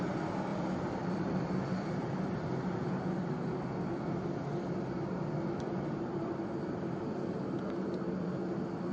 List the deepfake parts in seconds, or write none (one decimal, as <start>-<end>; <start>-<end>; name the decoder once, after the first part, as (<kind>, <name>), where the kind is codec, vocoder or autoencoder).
0.5-2.9 (vocoder, BigVGAN v2)